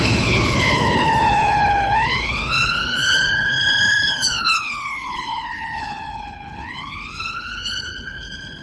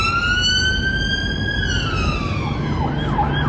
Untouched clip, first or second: second